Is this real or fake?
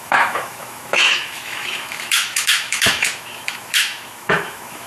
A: fake